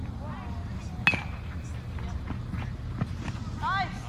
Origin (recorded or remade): recorded